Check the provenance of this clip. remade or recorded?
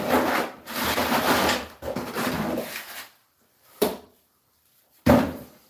remade